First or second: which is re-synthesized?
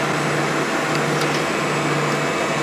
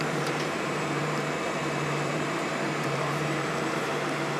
second